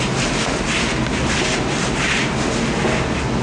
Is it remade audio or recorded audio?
recorded